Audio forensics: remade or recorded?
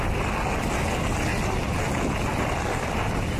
recorded